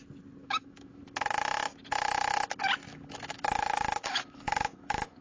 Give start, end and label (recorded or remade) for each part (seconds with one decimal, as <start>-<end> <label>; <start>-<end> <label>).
0.0-0.4 recorded; 0.4-1.0 remade; 1.0-2.9 recorded; 2.9-5.2 remade